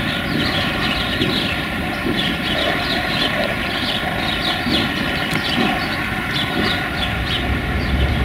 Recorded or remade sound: remade